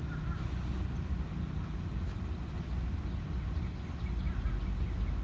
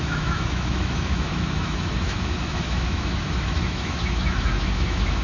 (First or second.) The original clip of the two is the first